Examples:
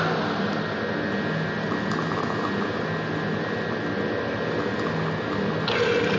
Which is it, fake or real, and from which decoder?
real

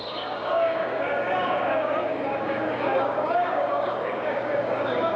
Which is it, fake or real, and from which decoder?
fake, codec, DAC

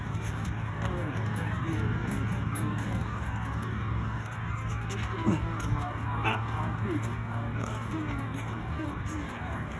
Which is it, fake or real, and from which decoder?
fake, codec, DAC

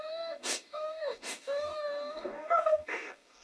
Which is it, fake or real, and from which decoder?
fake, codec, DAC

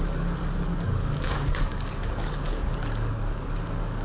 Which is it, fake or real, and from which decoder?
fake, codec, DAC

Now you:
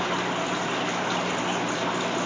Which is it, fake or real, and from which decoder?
real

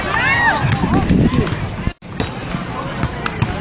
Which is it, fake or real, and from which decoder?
real